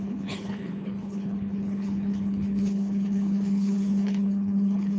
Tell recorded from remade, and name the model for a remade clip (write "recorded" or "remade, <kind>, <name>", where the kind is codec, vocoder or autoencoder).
remade, codec, HILCodec